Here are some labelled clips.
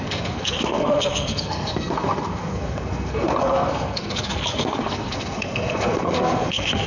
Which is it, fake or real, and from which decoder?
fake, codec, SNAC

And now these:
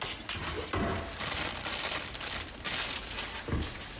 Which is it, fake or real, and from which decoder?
real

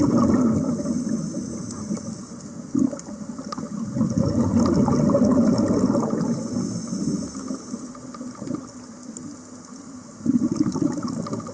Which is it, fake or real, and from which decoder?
real